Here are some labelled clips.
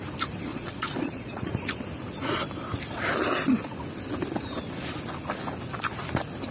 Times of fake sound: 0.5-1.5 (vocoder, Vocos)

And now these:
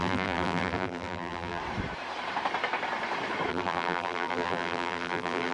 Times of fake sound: 0.0-1.6 (vocoder, BigVGAN v2); 3.5-5.5

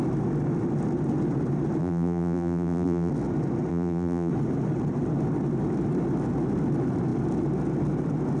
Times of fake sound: 1.8-3.1 (vocoder, BigVGAN v2); 3.7-4.3

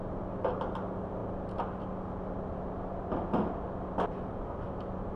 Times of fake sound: none

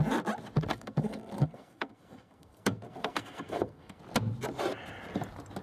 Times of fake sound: 0.7-4.0 (codec, SNAC)

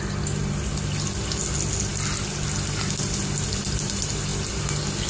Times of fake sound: none

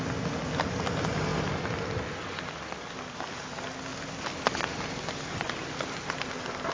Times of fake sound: none